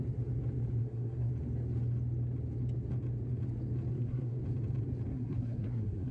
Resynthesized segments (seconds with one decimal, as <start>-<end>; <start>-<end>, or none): 0.8-1.3; 3.9-4.4; 5.1-6.1